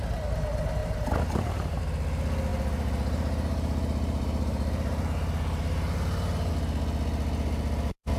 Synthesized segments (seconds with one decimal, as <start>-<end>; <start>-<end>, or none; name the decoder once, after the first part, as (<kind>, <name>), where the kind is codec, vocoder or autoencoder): 0.8-1.8 (vocoder, BigVGAN v2); 2.5-6.5